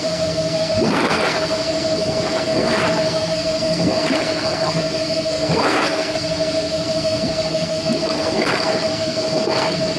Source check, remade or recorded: remade